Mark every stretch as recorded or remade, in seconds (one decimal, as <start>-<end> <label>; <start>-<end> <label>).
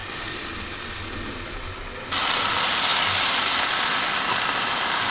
0.0-5.1 recorded